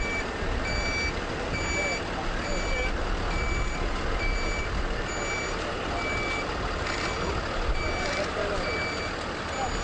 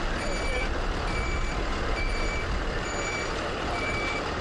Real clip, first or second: first